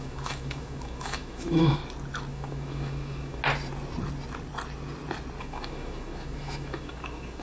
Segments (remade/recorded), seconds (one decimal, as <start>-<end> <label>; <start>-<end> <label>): 0.0-1.8 remade; 1.8-2.3 recorded; 2.3-3.4 remade; 3.4-5.4 recorded; 5.4-7.4 remade